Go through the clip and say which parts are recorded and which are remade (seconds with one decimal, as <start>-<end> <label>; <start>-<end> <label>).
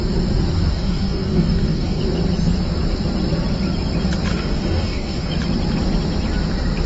0.0-0.7 recorded; 0.7-2.0 remade; 2.0-4.3 recorded; 4.3-5.3 remade; 5.3-6.9 recorded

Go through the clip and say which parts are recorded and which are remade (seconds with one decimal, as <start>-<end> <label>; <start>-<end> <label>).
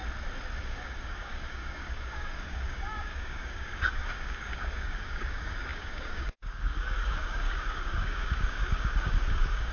0.0-0.6 recorded; 0.6-9.7 remade